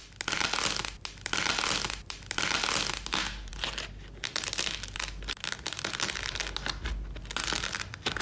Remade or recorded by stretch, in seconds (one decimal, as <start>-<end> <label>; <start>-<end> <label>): 0.0-8.2 recorded